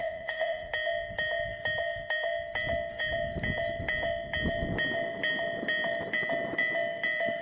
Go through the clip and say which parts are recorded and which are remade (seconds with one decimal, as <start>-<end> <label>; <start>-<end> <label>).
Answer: 0.0-0.7 remade; 0.7-7.4 recorded